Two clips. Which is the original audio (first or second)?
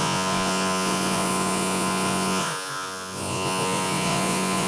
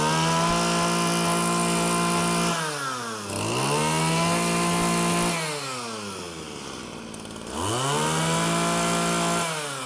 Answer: second